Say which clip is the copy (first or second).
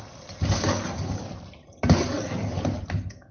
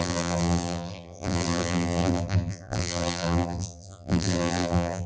second